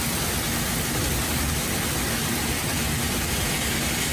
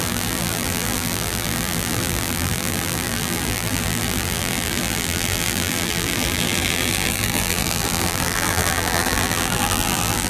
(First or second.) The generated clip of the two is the second